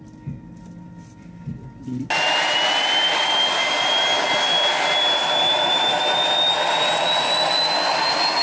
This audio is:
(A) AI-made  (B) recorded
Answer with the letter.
B